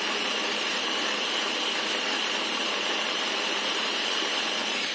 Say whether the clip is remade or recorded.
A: remade